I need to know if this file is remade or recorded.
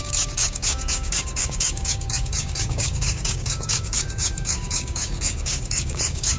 remade